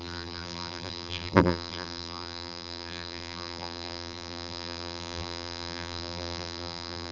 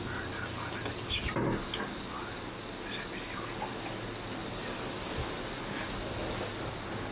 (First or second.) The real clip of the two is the second